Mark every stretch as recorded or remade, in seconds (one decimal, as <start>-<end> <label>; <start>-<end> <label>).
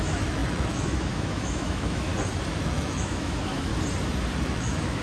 0.0-2.1 remade; 2.1-2.6 recorded; 2.6-3.7 remade; 3.7-4.4 recorded; 4.4-5.0 remade